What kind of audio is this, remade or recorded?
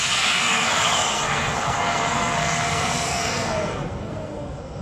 remade